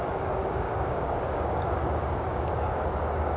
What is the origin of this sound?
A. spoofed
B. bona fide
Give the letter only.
A